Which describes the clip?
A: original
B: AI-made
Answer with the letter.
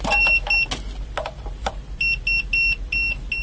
A